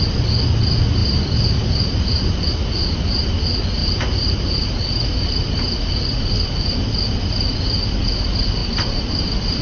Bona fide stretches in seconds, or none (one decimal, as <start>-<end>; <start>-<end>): 0.0-1.0; 2.5-3.8; 6.7-8.6